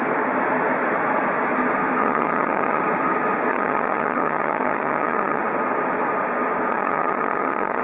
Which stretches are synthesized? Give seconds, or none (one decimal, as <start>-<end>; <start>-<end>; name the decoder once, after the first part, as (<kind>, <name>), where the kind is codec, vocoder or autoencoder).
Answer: 2.0-2.8 (vocoder, HiFi-GAN); 3.5-5.4; 6.7-7.8